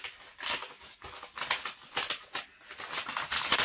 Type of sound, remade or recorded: recorded